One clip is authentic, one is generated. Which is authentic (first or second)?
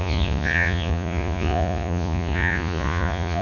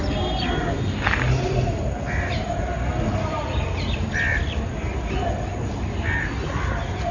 second